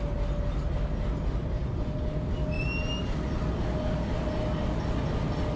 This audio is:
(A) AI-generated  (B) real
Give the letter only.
B